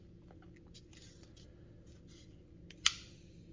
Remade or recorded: recorded